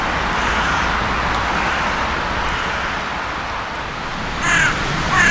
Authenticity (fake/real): real